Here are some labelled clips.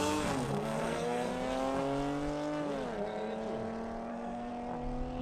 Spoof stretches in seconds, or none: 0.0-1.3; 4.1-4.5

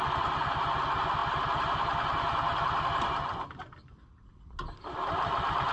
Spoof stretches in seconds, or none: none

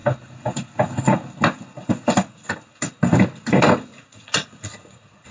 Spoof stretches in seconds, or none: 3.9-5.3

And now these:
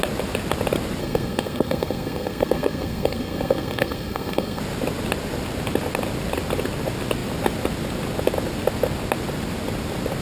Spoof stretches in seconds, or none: 1.0-4.6

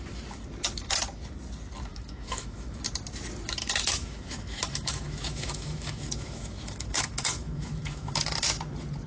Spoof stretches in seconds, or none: 1.9-2.8; 3.6-8.1

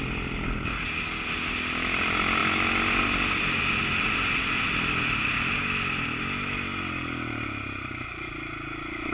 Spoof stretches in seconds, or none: none

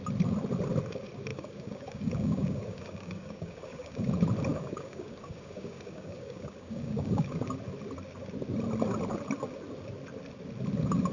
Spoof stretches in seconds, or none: 1.3-4.1; 4.5-7.4